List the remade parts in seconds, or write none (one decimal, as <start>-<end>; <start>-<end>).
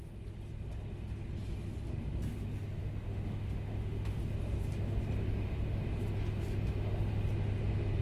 2.8-4.2; 5.2-5.8